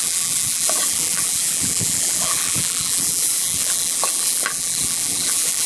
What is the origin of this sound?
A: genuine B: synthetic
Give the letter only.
B